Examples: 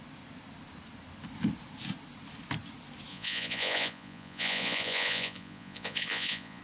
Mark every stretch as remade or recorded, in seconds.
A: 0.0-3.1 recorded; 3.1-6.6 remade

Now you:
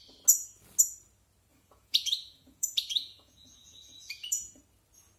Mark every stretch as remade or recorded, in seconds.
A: 0.0-1.5 recorded; 1.5-4.6 remade; 4.6-5.2 recorded